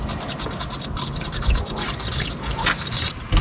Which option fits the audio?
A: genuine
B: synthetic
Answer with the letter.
A